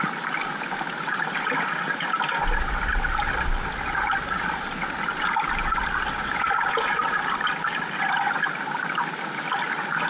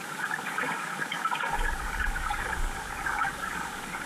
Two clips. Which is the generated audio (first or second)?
second